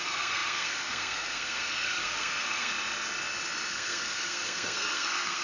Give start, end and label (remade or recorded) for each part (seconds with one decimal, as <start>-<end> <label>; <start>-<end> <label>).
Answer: 0.0-2.7 remade; 2.7-3.7 recorded; 3.7-5.4 remade